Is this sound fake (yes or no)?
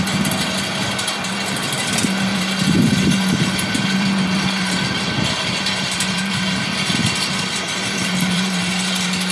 yes